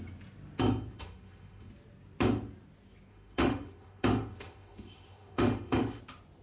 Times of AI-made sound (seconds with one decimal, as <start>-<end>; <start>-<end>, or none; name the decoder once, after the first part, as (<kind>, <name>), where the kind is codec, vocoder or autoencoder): 0.9-1.7 (autoencoder, DAC-VAE); 3.1-6.0